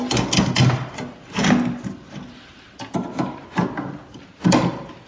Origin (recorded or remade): recorded